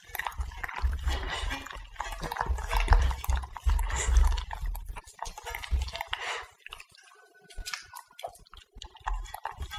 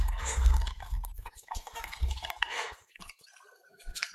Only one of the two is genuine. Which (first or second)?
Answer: first